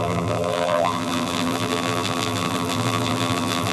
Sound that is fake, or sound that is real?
fake